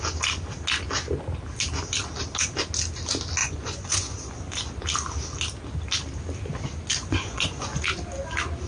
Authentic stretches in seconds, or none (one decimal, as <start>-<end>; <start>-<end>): 0.0-3.4; 4.3-7.0; 7.8-8.7